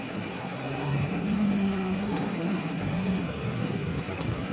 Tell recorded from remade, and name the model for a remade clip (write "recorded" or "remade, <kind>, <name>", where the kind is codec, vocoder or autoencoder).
remade, codec, SNAC